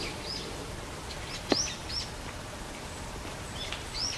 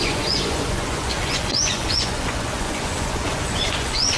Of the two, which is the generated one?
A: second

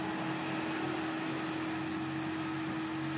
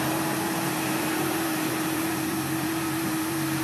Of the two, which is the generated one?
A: second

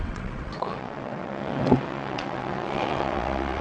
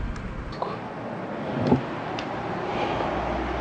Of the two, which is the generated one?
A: first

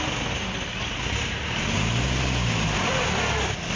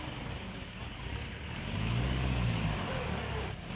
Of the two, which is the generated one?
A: second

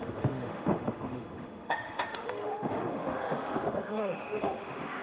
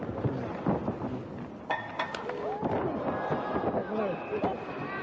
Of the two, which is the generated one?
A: first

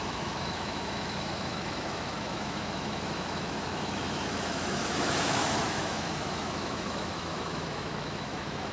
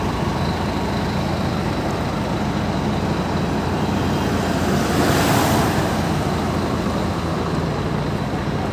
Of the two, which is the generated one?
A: first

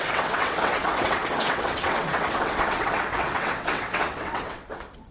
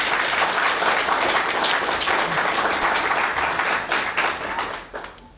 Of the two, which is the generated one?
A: first